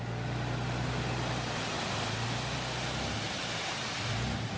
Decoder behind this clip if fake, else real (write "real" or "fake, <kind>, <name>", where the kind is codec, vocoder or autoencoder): real